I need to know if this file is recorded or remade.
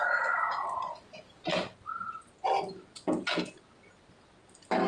recorded